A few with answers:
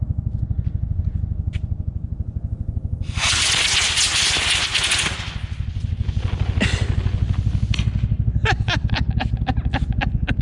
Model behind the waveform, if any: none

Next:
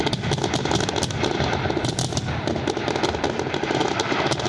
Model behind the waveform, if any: none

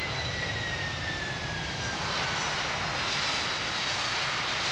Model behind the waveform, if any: none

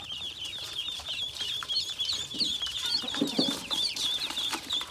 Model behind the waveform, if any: vocoder, BigVGAN v2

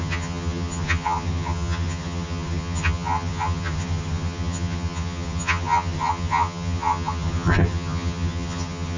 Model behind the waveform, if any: vocoder, HiFi-GAN